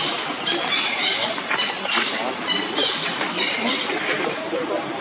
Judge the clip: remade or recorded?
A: recorded